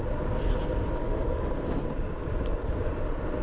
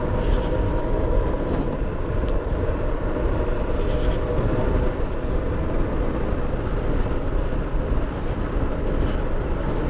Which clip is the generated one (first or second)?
first